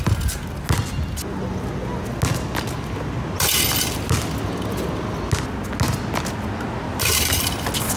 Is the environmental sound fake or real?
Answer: real